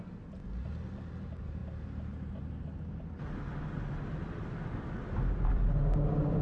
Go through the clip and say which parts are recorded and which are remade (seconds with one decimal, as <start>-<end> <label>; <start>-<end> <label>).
0.0-6.4 recorded